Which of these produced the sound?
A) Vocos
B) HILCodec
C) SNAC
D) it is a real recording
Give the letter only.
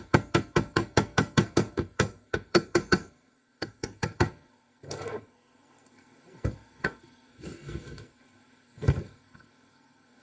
C